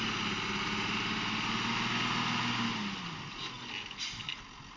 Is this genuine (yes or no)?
yes